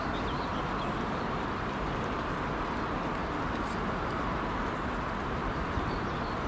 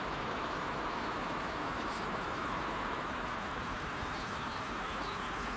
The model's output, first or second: second